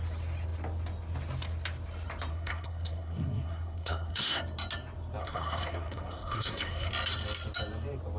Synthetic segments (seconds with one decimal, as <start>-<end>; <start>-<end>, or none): 2.3-4.4; 5.2-6.9